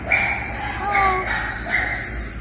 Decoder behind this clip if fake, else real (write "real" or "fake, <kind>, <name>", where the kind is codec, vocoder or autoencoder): real